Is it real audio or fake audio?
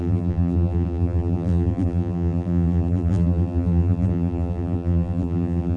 fake